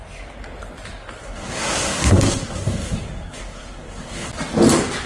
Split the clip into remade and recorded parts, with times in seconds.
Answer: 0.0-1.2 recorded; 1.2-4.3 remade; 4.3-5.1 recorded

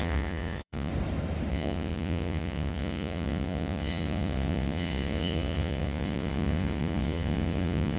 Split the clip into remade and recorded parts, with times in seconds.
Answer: 0.0-0.9 remade; 0.9-1.5 recorded; 1.5-8.0 remade

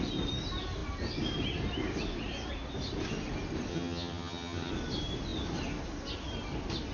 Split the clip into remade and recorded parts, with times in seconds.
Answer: 0.0-3.7 recorded; 3.7-4.7 remade; 4.7-6.9 recorded

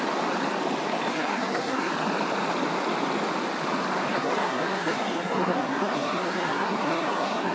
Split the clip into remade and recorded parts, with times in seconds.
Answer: 0.0-1.1 recorded; 1.1-1.9 remade; 1.9-4.1 recorded; 4.1-7.5 remade

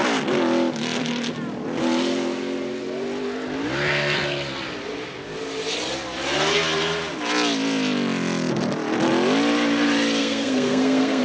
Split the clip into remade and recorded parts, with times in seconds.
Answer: 0.0-10.2 recorded; 10.2-11.2 remade

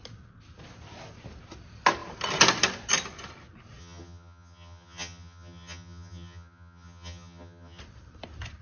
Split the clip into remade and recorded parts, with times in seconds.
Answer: 0.0-3.8 recorded; 3.8-7.8 remade; 7.8-8.6 recorded

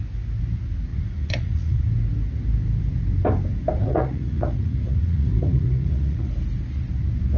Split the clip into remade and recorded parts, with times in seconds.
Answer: 0.0-0.9 recorded; 0.9-1.8 remade; 1.8-3.8 recorded; 3.8-6.3 remade; 6.3-7.4 recorded